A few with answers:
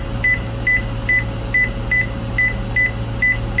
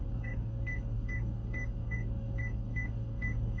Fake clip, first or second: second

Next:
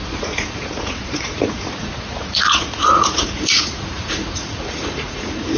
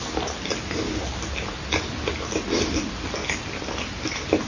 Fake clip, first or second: first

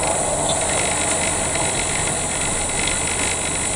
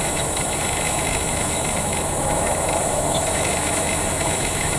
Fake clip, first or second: second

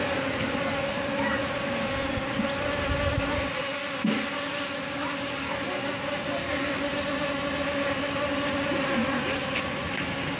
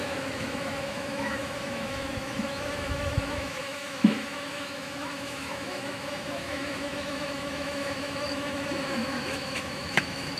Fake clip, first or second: second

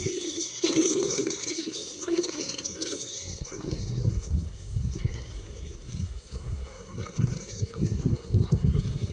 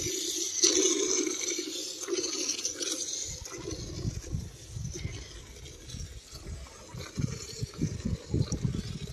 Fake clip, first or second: first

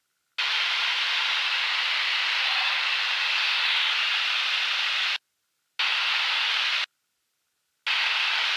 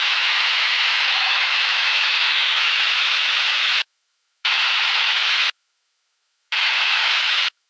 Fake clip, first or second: second